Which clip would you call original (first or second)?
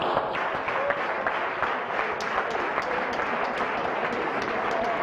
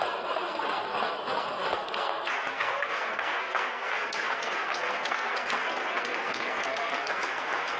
first